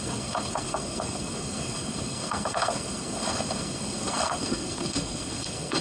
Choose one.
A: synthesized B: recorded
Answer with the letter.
A